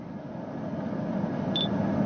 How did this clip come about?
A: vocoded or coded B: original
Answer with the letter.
B